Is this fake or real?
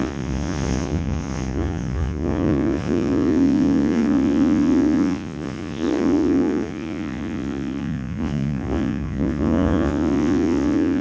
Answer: fake